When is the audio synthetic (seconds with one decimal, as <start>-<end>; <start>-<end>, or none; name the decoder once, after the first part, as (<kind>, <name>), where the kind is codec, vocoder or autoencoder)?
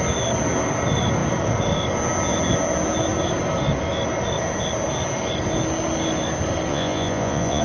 6.7-7.6 (vocoder, Vocos)